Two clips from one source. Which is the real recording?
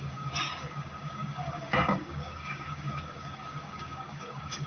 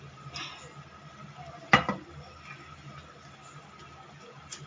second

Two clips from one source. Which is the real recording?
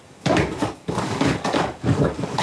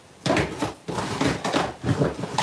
second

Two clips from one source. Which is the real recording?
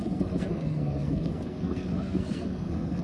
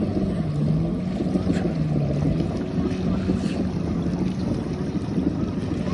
second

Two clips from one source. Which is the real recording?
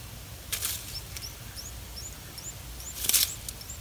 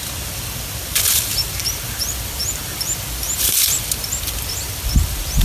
first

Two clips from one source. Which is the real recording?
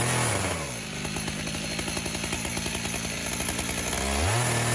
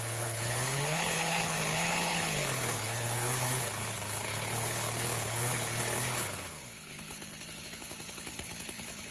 first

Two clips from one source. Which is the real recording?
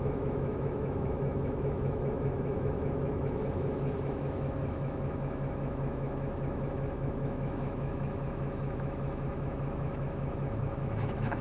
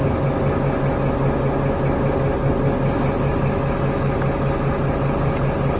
second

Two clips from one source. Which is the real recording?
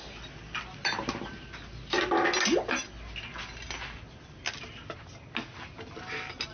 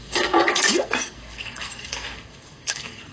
first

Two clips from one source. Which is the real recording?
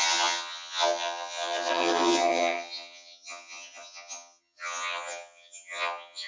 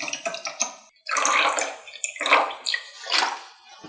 second